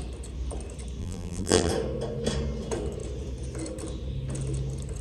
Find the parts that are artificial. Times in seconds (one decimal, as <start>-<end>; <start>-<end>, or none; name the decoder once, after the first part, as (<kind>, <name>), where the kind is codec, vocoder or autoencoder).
1.0-1.7 (vocoder, BigVGAN v2)